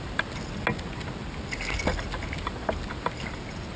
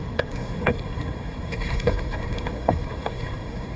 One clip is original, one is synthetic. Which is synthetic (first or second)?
second